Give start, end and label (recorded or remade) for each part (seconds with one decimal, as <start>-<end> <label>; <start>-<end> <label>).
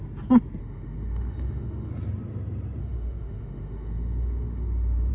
0.0-0.6 recorded; 0.6-1.9 remade; 1.9-2.8 recorded; 2.8-5.1 remade